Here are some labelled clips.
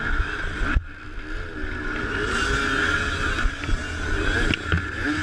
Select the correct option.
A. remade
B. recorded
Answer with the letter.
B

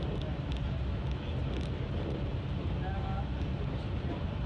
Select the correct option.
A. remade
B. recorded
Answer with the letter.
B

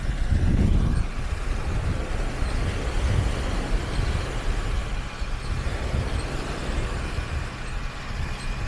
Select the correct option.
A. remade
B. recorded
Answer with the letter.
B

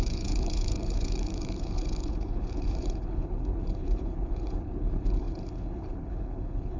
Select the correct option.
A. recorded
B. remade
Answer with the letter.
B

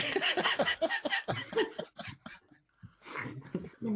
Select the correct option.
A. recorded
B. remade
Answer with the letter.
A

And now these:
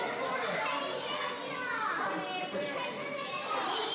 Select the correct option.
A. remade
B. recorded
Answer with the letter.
B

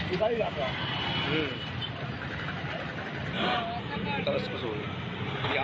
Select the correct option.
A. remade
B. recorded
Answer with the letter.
B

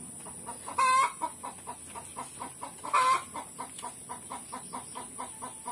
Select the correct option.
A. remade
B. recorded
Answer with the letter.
B